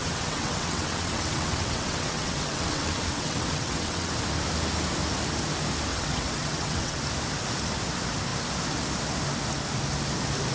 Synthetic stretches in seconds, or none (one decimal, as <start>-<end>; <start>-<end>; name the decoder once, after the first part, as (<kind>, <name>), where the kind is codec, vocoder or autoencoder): 0.0-4.1 (vocoder, WaveNeXt); 5.9-7.0